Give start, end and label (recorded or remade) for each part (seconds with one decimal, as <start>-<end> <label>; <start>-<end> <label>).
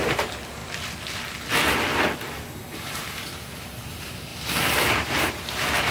0.0-0.6 remade; 0.6-2.6 recorded; 2.6-4.3 remade; 4.3-4.9 recorded; 4.9-5.9 remade